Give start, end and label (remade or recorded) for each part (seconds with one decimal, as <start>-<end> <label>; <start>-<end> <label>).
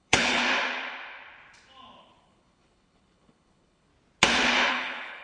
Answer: 0.0-0.4 remade; 0.4-2.0 recorded; 2.0-3.9 remade; 3.9-4.7 recorded; 4.7-5.2 remade